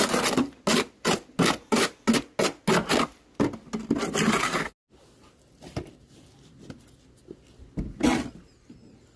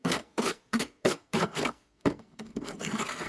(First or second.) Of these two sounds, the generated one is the second